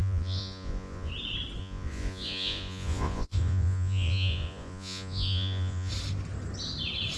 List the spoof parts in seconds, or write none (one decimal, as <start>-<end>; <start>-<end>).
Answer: 0.0-1.1; 1.6-5.9